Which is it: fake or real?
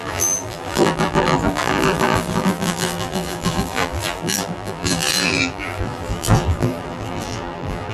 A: fake